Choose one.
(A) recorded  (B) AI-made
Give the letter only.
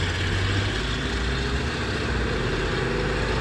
A